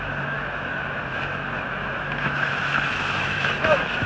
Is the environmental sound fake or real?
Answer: fake